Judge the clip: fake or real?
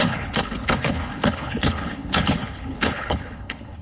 fake